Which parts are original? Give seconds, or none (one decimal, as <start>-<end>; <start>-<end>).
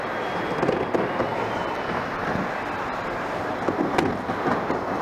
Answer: 0.0-5.0